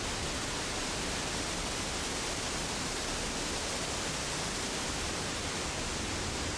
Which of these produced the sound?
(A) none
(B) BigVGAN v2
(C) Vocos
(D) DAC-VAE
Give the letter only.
A